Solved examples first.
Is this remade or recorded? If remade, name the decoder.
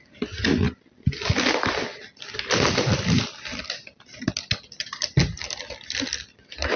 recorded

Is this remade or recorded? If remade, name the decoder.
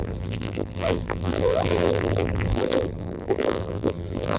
remade, vocoder, BigVGAN v2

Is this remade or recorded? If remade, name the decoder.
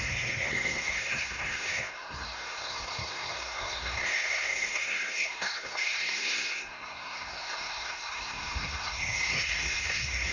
remade, codec, SNAC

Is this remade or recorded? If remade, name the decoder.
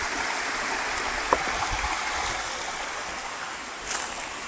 recorded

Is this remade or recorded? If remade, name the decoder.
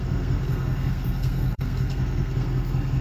remade, codec, SNAC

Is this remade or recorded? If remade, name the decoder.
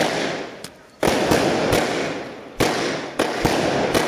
recorded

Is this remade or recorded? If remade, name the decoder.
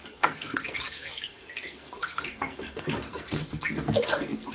remade, codec, SNAC